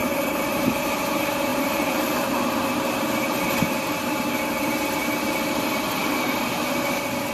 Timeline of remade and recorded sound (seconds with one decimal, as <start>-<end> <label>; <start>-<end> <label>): 0.0-1.0 remade; 1.0-1.5 recorded; 1.5-5.2 remade; 5.2-6.0 recorded; 6.0-6.6 remade; 6.6-7.3 recorded